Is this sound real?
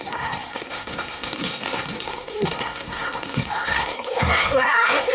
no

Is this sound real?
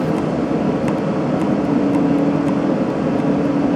yes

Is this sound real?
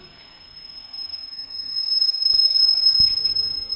no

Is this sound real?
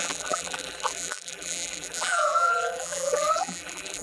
no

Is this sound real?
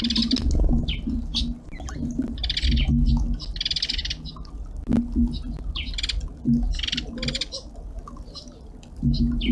yes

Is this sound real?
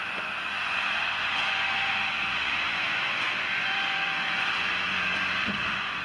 no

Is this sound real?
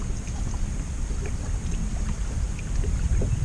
yes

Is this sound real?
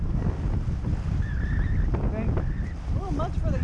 yes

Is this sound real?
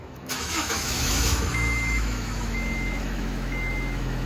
no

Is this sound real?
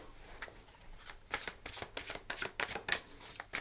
yes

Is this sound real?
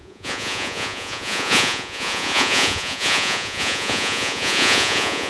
no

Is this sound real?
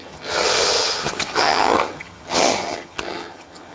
no